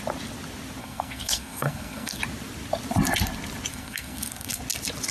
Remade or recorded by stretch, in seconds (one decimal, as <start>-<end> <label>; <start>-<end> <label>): 0.0-0.8 recorded; 0.8-2.2 remade; 2.2-3.7 recorded; 3.7-4.6 remade; 4.6-5.1 recorded